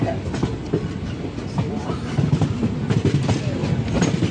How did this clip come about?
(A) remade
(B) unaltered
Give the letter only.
B